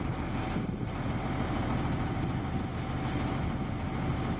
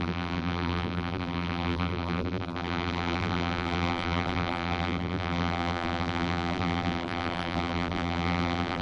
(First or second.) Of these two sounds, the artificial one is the second